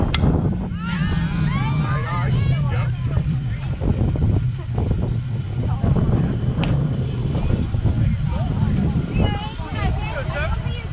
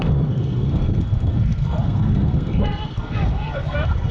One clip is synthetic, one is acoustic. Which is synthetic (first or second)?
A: second